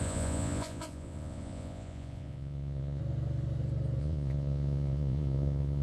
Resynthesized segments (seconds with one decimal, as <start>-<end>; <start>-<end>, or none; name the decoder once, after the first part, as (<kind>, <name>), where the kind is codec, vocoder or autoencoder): 0.0-3.0 (vocoder, Vocos); 4.0-5.8